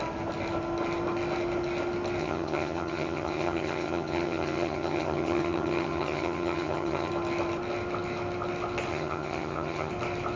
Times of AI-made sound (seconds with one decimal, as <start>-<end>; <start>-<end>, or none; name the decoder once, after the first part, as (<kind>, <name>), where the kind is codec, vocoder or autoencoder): 2.2-7.1 (vocoder, HiFi-GAN); 8.9-9.9